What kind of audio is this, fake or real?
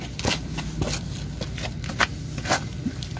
real